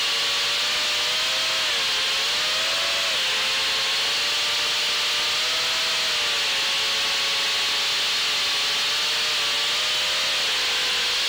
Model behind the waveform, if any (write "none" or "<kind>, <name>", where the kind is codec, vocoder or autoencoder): none